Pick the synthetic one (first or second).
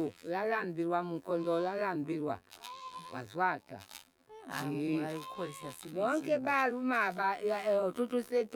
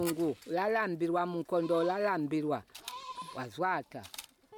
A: first